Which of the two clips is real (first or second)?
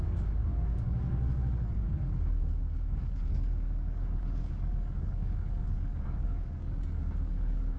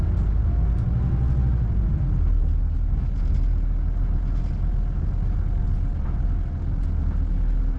second